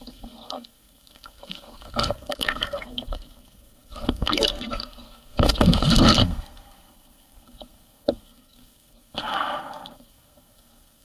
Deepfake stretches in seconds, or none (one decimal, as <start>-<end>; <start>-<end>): 0.0-11.0